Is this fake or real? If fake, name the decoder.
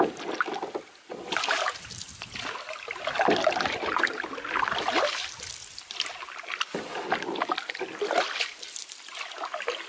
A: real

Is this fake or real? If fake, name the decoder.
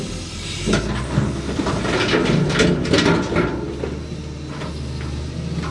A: real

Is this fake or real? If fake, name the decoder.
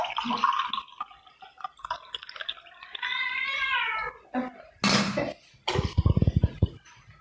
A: real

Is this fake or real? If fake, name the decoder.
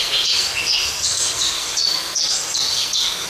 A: fake, codec, SNAC